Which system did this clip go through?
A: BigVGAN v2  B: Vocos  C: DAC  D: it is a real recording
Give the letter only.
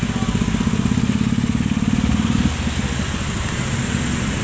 D